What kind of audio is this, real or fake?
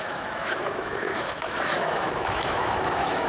fake